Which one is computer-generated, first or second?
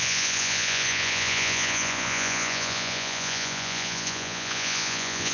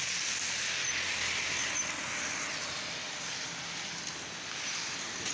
first